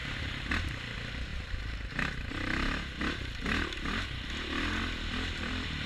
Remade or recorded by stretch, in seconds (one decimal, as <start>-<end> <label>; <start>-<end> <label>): 0.0-0.7 recorded; 0.7-1.3 remade; 1.3-4.8 recorded; 4.8-5.9 remade